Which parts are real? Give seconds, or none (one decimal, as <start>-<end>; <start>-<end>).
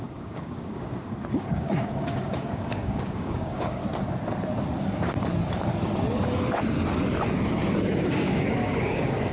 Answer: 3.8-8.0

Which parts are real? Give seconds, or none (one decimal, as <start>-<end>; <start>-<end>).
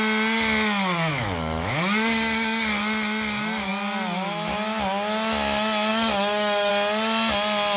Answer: 0.0-1.1; 2.8-5.9; 6.7-7.8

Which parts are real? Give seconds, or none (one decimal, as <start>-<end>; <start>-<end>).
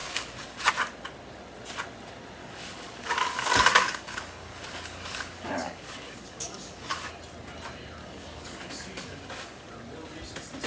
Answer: 0.7-2.4; 7.1-8.0; 9.7-10.7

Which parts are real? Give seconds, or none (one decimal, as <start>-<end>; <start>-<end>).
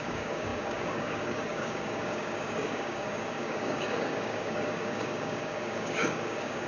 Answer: none